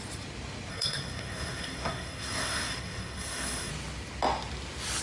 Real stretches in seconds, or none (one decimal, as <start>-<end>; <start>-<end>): 0.0-0.7; 3.7-5.0